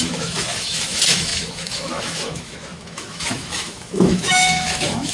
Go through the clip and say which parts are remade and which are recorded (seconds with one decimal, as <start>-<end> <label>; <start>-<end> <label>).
0.0-5.1 remade